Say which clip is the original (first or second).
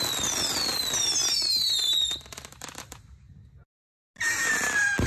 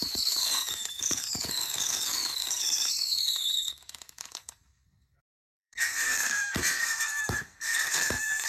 first